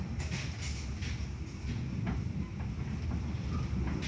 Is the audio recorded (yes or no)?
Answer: yes